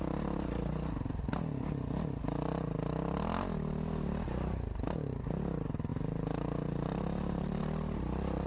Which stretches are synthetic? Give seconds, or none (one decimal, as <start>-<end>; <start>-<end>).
5.9-7.6